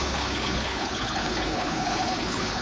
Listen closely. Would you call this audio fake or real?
fake